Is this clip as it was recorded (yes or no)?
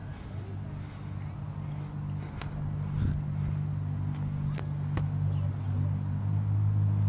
yes